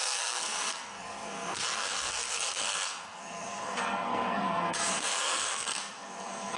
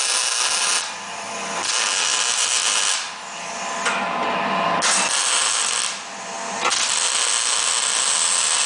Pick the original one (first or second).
second